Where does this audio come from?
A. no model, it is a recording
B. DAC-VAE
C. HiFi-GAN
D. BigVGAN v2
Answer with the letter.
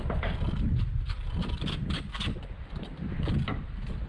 A